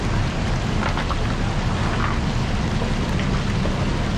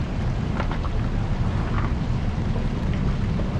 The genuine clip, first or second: first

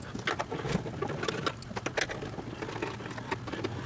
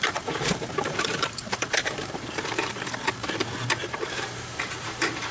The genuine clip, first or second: first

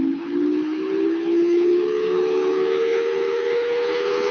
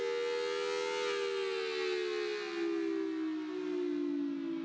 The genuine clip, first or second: second